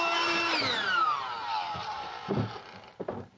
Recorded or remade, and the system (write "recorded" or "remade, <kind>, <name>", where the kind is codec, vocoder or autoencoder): remade, vocoder, BigVGAN v2